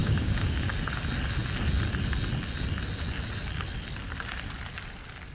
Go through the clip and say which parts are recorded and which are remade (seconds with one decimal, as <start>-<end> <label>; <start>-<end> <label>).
0.0-0.7 remade; 0.7-5.3 recorded